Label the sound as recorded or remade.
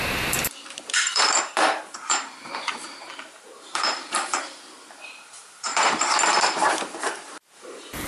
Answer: remade